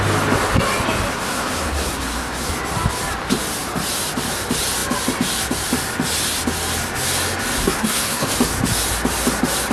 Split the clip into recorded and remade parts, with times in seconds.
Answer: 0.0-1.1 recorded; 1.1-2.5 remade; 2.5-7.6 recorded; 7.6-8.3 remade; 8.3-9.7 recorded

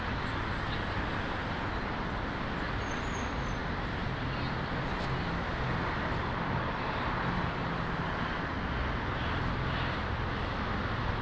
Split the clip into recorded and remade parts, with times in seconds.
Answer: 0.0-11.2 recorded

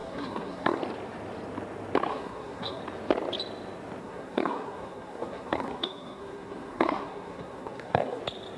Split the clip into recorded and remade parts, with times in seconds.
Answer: 0.0-0.8 remade; 0.8-2.1 recorded; 2.1-2.8 remade; 2.8-4.0 recorded; 4.0-8.2 remade; 8.2-8.6 recorded

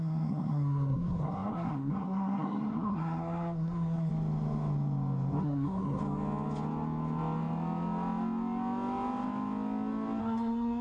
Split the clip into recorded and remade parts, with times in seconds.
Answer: 0.0-4.1 remade; 4.1-5.4 recorded; 5.4-6.0 remade; 6.0-10.2 recorded; 10.2-10.8 remade